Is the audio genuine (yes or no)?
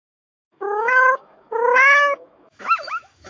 no